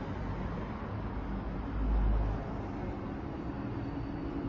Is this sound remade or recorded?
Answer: recorded